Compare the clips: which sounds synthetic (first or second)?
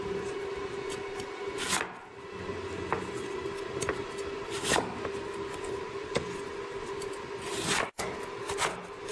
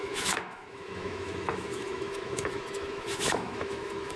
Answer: second